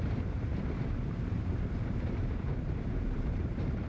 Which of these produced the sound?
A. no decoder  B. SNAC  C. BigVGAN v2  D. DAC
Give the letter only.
C